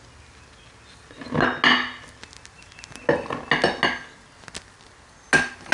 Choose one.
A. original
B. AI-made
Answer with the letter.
A